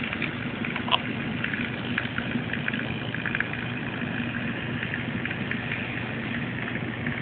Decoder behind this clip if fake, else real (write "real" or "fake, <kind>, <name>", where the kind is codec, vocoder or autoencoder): real